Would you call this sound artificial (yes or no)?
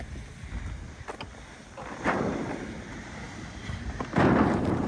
no